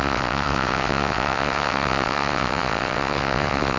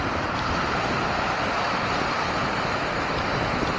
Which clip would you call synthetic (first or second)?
first